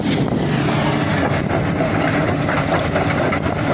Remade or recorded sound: remade